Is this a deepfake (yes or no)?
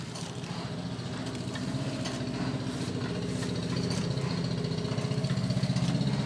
no